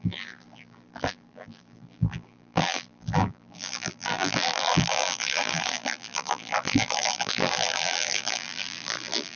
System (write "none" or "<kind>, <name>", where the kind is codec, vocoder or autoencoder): vocoder, BigVGAN v2